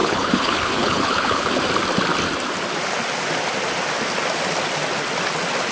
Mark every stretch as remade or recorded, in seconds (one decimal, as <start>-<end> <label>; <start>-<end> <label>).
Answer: 0.0-1.5 remade; 1.5-5.7 recorded